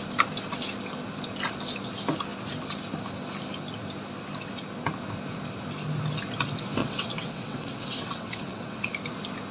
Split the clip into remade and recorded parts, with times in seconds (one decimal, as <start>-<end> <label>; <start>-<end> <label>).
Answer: 0.0-6.8 recorded; 6.8-8.9 remade; 8.9-9.5 recorded